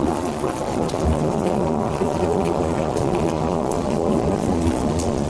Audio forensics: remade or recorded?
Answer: remade